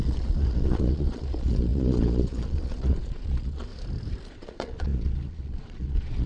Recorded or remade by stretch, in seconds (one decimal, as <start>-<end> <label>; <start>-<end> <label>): 0.0-3.7 remade; 3.7-4.3 recorded; 4.3-6.3 remade